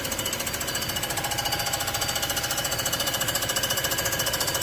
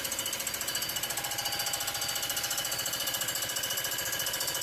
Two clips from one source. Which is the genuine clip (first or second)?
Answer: second